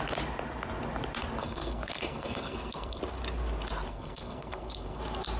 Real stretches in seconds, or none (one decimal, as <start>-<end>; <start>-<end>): 0.0-1.4; 3.0-3.9; 5.0-5.4